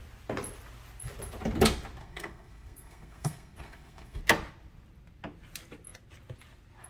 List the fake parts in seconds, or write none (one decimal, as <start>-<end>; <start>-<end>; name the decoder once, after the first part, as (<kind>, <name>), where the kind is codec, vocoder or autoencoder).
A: 2.0-4.2 (codec, SNAC)